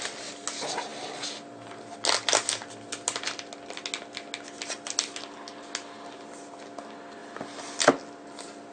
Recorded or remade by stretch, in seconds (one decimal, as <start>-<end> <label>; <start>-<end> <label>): 0.0-8.7 recorded